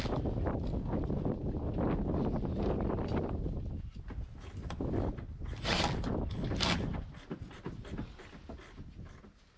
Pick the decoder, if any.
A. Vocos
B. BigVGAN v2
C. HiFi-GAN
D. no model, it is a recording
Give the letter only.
D